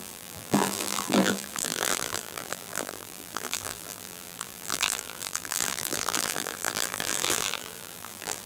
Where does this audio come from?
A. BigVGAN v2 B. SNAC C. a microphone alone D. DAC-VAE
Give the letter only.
A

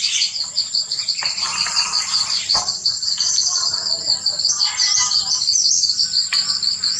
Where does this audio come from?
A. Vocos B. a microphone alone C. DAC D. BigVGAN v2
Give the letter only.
D